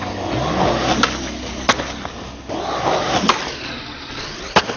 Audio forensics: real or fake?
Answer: real